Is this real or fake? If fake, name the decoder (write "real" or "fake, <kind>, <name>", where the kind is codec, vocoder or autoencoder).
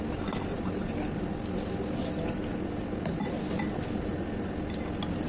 real